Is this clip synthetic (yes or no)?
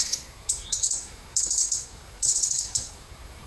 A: yes